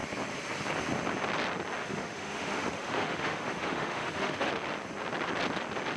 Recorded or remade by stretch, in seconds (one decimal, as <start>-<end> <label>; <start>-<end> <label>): 0.0-1.8 recorded; 1.8-4.5 remade; 4.5-6.0 recorded